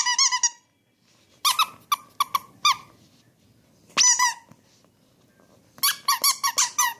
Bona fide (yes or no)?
yes